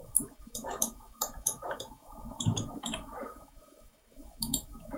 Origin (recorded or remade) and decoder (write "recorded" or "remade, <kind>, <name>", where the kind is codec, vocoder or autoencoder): remade, autoencoder, DAC-VAE